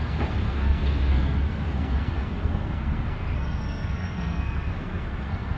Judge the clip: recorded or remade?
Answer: remade